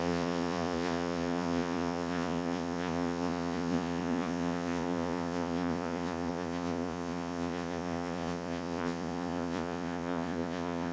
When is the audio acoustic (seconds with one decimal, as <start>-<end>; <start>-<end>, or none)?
none